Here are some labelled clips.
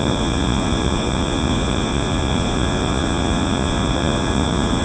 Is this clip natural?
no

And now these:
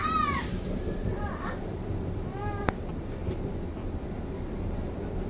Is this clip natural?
yes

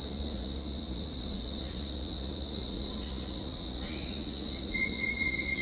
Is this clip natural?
no